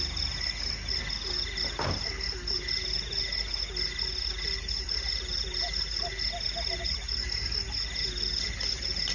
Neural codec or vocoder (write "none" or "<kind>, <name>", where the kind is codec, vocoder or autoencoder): none